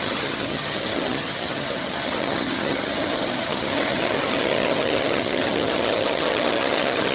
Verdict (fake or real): fake